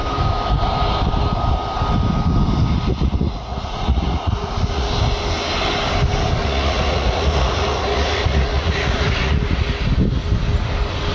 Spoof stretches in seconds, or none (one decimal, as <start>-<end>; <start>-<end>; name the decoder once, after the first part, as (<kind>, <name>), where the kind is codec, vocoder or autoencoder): 2.9-4.9 (vocoder, Vocos); 6.4-9.7